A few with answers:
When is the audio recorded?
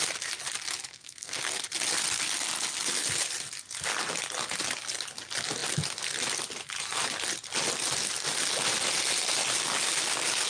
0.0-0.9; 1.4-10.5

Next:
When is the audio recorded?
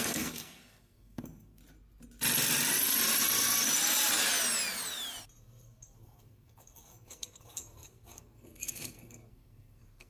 1.6-5.4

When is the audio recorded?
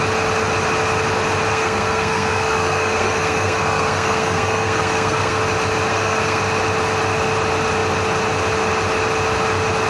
0.0-1.5; 5.4-5.9; 6.4-9.9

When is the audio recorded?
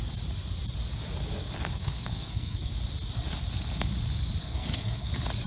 0.0-1.7; 2.7-4.4; 5.1-5.5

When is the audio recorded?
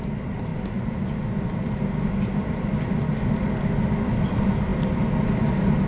0.0-5.9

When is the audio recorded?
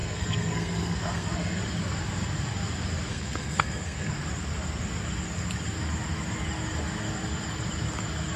1.6-3.1; 4.1-8.4